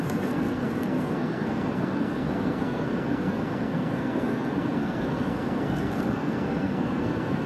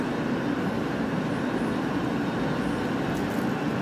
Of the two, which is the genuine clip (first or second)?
second